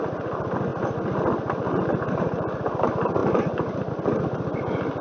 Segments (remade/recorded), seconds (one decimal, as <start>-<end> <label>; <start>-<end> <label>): 0.0-5.0 recorded